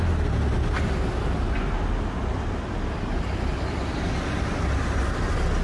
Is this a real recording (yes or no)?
yes